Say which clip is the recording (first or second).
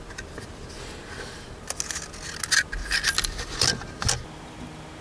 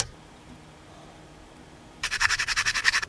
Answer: first